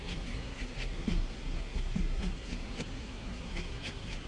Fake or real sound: fake